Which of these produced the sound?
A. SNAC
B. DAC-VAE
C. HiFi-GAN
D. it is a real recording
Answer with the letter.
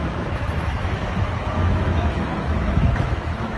B